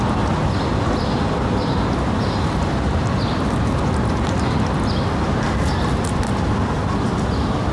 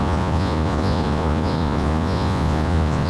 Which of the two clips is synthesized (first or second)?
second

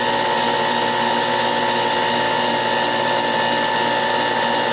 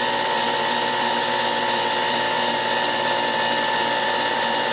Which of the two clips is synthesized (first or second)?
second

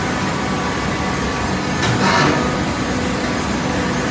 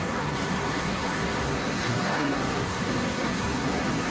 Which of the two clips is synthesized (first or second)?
second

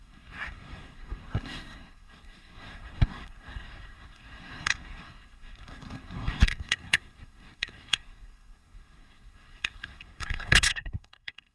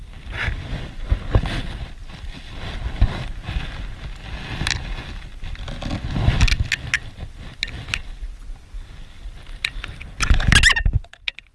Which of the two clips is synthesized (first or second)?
first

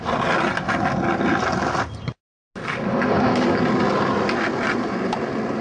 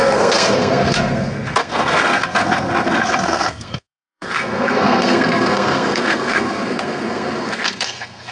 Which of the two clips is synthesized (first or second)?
second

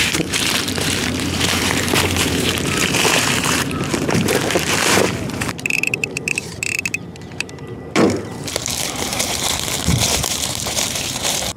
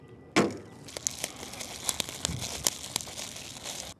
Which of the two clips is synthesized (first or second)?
first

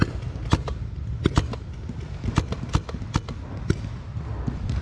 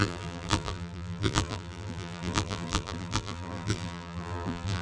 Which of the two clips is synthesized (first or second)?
second